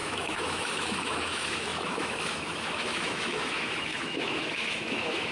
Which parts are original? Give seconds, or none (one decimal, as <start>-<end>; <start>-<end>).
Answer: none